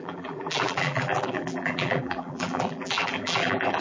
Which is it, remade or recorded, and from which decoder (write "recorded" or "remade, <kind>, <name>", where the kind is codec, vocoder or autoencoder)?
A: remade, vocoder, BigVGAN v2